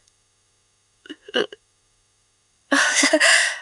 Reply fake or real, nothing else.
fake